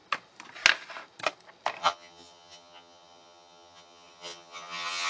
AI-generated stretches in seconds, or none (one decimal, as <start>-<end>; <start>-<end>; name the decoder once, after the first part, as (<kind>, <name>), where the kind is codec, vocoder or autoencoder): 1.8-5.1 (vocoder, HiFi-GAN)

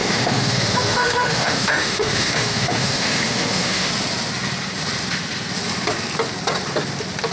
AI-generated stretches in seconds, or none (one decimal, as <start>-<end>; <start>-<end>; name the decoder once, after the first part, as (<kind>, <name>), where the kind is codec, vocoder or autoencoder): 0.0-3.9 (autoencoder, DAC-VAE)